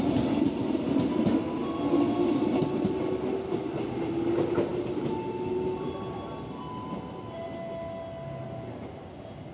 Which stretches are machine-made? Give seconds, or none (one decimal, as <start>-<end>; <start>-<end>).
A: none

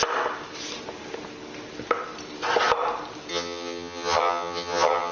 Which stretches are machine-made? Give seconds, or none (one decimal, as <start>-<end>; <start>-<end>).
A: 3.3-5.1

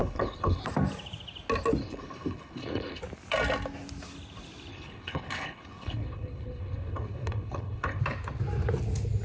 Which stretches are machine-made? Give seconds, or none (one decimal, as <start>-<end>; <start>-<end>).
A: 0.0-0.6; 1.8-3.0; 4.7-8.0

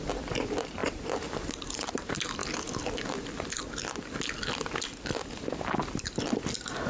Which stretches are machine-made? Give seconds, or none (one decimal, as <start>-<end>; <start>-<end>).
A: 0.0-2.4; 6.5-6.9

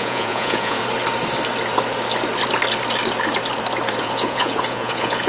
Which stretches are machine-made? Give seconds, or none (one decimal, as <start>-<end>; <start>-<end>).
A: 0.0-0.8; 4.0-5.3

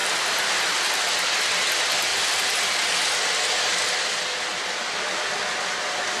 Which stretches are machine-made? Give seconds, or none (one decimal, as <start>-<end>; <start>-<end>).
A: none

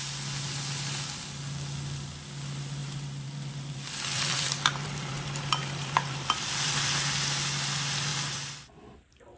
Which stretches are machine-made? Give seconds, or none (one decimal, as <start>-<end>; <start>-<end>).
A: 2.8-6.8; 8.1-8.8